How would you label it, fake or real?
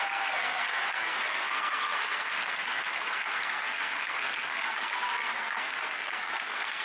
fake